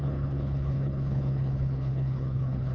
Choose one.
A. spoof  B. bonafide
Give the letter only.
A